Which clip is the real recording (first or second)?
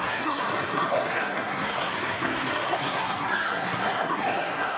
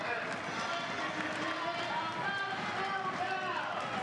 second